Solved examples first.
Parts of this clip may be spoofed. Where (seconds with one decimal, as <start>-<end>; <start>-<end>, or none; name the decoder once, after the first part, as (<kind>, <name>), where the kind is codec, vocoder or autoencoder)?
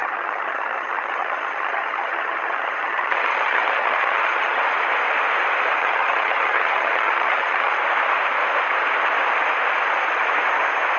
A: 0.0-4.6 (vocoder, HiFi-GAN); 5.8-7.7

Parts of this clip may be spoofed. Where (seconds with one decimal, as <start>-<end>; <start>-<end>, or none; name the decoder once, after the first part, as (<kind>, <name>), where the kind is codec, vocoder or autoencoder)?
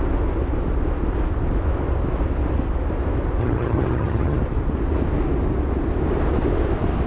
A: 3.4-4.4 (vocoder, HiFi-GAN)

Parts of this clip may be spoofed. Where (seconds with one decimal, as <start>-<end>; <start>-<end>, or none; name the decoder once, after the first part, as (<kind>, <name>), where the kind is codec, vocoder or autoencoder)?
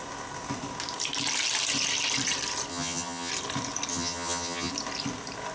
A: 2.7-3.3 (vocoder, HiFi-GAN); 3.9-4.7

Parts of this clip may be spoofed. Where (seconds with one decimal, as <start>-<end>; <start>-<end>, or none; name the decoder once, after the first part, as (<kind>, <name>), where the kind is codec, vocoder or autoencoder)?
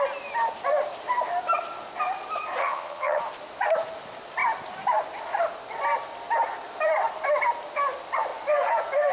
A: 2.6-3.2 (vocoder, HiFi-GAN)